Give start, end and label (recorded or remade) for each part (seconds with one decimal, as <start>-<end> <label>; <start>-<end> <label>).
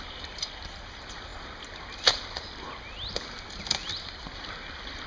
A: 0.0-5.1 recorded